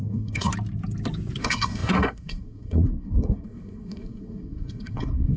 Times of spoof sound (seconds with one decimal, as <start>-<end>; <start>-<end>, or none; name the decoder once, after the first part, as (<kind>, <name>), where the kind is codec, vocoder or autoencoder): 0.0-0.5 (codec, SNAC); 1.4-5.4